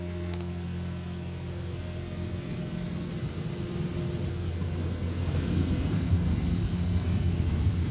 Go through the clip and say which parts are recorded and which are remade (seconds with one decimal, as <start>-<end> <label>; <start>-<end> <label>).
0.0-3.1 remade; 3.1-4.3 recorded; 4.3-7.9 remade